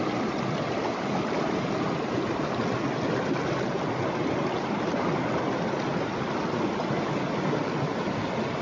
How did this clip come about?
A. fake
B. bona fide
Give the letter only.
B